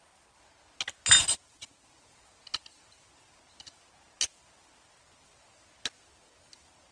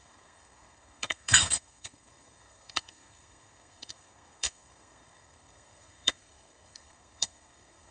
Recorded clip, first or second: first